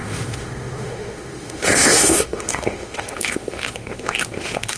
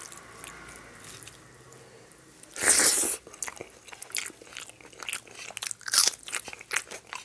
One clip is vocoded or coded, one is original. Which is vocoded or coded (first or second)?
first